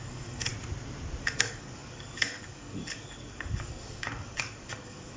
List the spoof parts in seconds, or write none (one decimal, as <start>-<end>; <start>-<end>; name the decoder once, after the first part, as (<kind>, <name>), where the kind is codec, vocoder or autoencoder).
0.0-0.5 (codec, DAC); 1.2-5.2